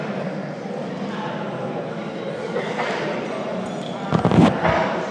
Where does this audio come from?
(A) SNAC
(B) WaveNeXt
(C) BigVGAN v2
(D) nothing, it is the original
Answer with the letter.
D